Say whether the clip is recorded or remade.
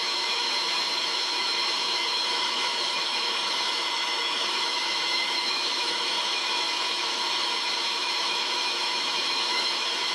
remade